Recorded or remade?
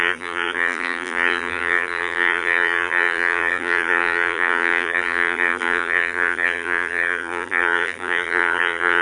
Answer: remade